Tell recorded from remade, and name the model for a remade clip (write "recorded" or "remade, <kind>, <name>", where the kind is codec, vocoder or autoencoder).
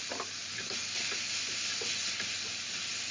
recorded